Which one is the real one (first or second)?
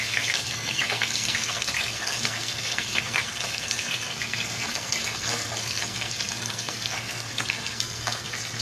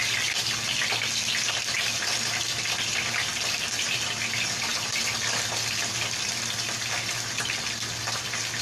second